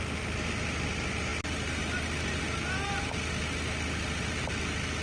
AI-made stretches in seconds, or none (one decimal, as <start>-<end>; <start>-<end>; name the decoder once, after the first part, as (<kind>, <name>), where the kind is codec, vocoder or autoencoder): none